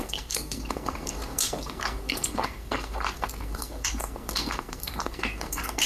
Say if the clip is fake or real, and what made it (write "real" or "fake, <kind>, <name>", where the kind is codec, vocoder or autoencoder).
fake, codec, SNAC